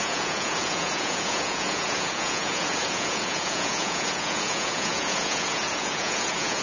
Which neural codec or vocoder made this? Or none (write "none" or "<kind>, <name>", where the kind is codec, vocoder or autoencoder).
vocoder, Vocos